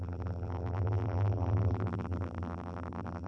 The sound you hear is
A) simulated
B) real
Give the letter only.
A